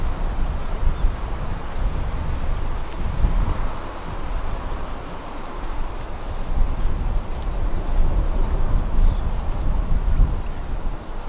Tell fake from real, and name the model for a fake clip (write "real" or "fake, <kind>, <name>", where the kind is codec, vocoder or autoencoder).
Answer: real